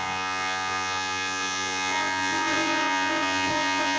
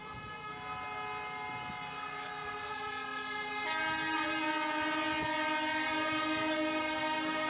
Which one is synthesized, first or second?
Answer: first